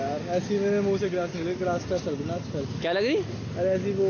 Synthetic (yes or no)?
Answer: no